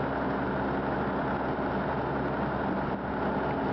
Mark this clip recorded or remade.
recorded